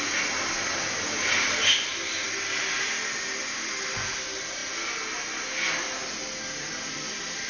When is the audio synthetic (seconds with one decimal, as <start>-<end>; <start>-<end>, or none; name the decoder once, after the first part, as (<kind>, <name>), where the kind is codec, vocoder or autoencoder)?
none